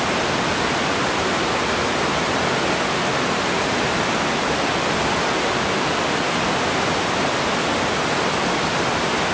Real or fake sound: real